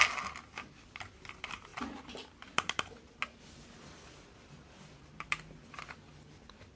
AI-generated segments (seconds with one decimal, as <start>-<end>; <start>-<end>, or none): none